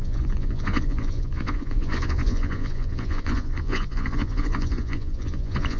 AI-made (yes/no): yes